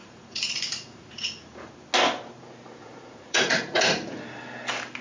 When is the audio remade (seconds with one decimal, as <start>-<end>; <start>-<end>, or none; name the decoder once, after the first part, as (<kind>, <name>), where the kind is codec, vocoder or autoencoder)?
0.0-1.7 (vocoder, Vocos); 2.8-3.6